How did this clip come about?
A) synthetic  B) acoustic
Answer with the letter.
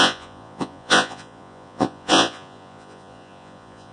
A